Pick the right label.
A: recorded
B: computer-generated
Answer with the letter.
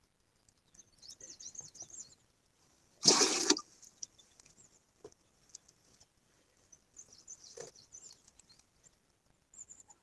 A